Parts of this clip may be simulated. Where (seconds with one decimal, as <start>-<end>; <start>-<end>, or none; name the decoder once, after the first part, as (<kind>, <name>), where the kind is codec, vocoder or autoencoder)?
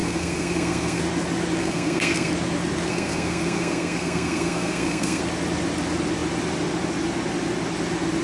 0.0-1.0 (codec, SNAC); 1.6-2.3; 2.9-5.2